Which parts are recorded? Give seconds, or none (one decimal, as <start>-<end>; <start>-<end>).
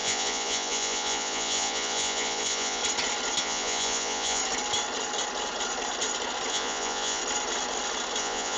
2.8-3.4; 4.4-6.5; 7.2-8.2